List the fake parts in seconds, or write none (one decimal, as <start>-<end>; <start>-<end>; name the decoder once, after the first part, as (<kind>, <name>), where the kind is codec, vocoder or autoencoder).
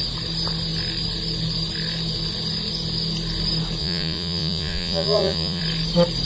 3.8-5.6 (vocoder, Vocos)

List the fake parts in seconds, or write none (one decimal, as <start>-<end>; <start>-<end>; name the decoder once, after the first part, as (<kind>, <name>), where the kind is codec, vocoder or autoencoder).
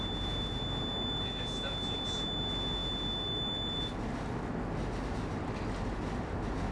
none